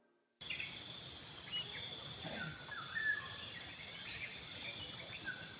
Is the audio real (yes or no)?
yes